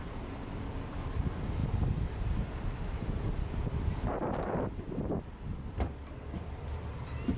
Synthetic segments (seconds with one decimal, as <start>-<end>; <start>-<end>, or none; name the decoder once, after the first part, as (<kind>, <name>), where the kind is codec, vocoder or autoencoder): none